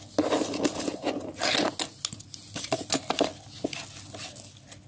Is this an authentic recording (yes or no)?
yes